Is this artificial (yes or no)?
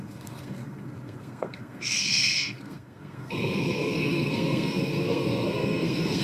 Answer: yes